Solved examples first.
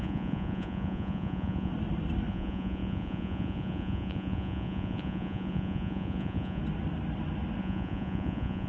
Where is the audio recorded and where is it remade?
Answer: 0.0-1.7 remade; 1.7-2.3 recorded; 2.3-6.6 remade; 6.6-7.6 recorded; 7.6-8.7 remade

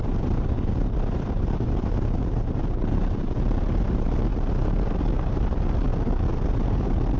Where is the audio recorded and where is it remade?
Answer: 0.0-5.9 remade; 5.9-6.5 recorded; 6.5-7.2 remade